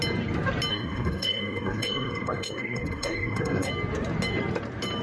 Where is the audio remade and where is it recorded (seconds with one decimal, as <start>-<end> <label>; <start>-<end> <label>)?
0.0-0.7 recorded; 0.7-3.7 remade; 3.7-5.0 recorded